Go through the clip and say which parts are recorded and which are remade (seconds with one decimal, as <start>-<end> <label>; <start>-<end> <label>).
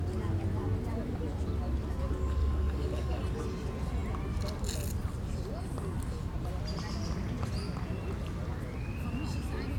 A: 0.0-2.4 recorded; 2.4-3.2 remade; 3.2-9.8 recorded